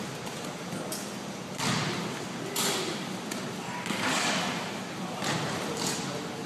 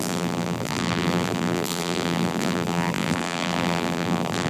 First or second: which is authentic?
first